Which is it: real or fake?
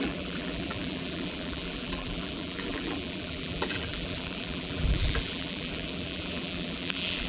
fake